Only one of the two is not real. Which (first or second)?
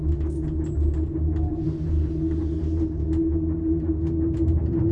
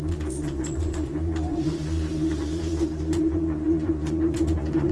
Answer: second